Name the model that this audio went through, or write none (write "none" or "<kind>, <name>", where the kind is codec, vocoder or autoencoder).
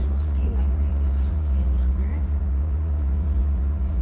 vocoder, Vocos